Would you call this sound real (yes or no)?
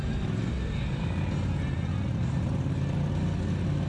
yes